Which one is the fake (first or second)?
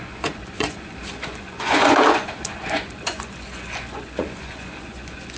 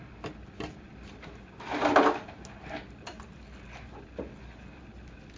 first